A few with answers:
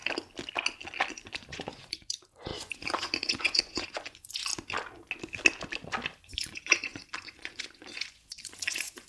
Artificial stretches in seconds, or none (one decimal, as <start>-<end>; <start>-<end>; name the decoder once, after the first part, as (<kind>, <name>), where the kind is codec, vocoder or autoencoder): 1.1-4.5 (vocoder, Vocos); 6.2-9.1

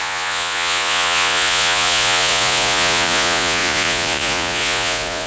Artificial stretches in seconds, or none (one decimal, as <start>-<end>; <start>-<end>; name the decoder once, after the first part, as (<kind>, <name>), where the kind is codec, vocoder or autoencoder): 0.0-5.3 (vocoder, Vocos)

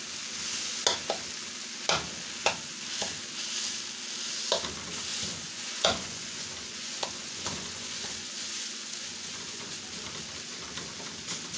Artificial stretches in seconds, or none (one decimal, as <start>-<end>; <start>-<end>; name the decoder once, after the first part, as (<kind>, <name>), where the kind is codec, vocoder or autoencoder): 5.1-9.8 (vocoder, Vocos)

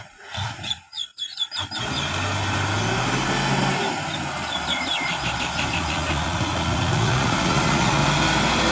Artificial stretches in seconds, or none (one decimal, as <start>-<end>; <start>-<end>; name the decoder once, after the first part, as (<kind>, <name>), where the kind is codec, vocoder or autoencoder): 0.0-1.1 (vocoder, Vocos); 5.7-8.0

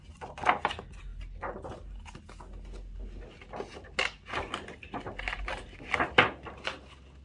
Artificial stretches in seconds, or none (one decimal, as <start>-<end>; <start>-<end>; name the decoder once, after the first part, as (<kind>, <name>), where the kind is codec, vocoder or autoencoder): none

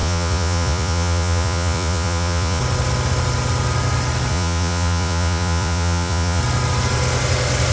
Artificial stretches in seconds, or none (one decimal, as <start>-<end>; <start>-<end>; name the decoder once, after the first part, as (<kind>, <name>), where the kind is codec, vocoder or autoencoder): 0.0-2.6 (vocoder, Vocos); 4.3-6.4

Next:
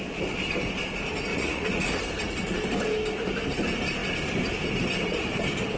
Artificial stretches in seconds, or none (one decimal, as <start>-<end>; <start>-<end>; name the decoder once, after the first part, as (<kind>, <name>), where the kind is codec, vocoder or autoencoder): 1.3-2.0 (vocoder, Vocos)

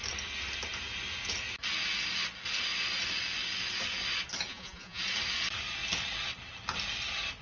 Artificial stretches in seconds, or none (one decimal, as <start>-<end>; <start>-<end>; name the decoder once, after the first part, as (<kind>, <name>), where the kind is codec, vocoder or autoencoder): 4.5-5.0 (vocoder, Vocos)